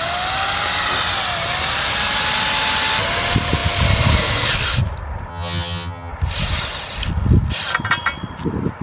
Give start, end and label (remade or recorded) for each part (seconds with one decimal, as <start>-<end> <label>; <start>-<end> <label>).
0.0-5.3 recorded; 5.3-6.1 remade; 6.1-8.8 recorded